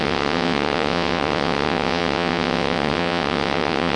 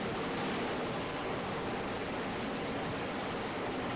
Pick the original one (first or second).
second